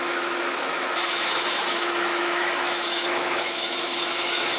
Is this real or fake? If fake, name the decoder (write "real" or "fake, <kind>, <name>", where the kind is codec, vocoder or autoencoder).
fake, autoencoder, DAC-VAE